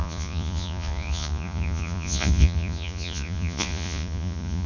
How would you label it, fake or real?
fake